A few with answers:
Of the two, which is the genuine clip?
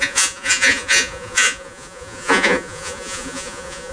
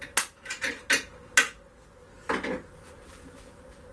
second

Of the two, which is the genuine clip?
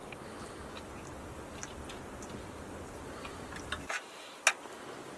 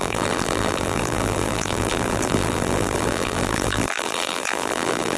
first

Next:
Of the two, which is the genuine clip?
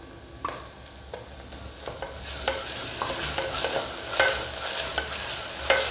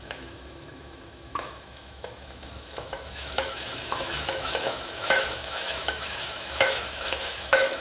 first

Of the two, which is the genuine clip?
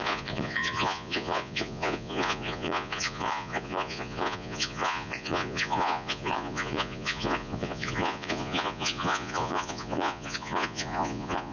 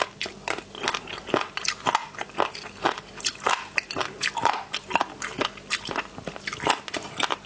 second